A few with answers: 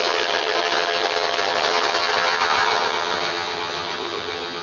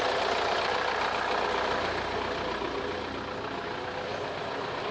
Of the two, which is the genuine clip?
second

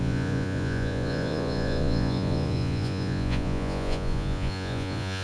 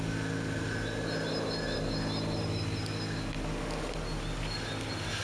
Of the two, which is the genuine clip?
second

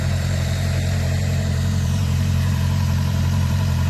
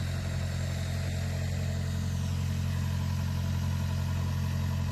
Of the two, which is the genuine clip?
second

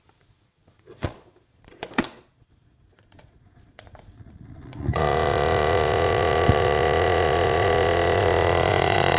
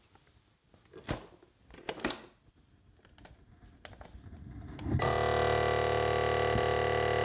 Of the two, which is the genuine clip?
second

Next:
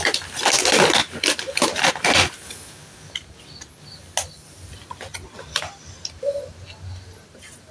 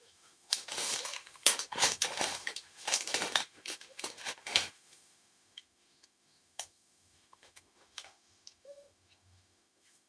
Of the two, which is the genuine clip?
first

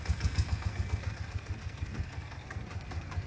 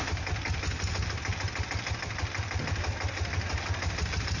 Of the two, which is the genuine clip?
second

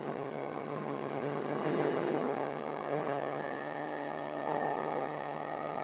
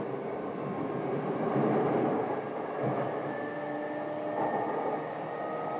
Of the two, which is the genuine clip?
second